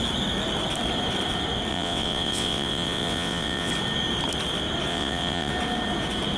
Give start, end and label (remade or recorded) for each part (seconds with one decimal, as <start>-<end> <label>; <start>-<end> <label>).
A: 0.0-1.7 recorded; 1.7-3.7 remade; 3.7-4.9 recorded; 4.9-5.5 remade; 5.5-6.4 recorded